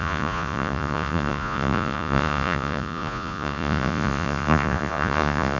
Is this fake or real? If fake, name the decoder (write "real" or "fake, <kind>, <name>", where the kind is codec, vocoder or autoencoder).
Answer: fake, vocoder, Vocos